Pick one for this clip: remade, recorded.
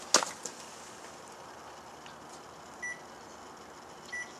recorded